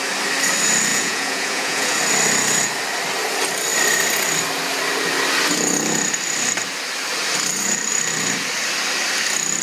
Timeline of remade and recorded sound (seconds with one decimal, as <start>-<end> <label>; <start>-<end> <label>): 0.0-0.9 recorded; 0.9-2.0 remade; 2.0-9.6 recorded